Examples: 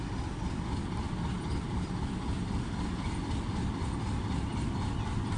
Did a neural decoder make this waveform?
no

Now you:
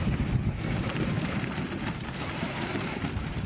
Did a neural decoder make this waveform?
no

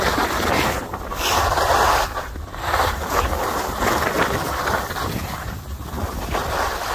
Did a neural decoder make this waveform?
no